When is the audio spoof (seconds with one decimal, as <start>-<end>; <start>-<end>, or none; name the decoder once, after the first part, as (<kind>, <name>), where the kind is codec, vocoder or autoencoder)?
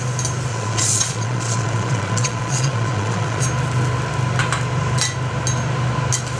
0.5-3.4 (vocoder, Vocos)